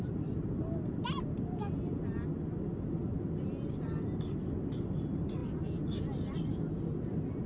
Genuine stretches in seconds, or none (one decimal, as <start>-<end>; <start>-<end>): 0.0-7.5

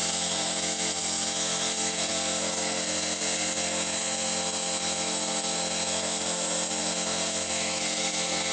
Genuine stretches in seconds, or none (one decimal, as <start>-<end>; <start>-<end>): none

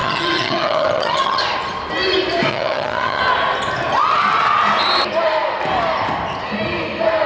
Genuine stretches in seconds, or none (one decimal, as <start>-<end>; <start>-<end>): 1.4-2.5; 3.2-7.3